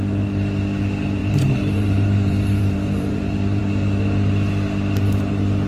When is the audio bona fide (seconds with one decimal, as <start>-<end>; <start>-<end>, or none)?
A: 0.0-1.2; 3.6-5.7